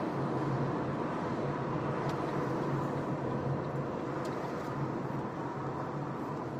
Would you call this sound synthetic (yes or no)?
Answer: no